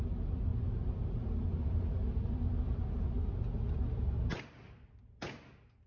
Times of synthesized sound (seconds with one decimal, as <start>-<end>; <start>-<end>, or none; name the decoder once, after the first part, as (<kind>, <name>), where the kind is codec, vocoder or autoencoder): none